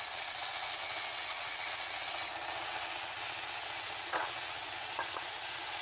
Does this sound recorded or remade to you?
remade